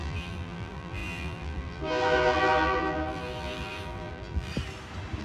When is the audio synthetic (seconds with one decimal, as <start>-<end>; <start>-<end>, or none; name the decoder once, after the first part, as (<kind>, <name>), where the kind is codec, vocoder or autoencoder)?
0.0-4.5 (vocoder, BigVGAN v2)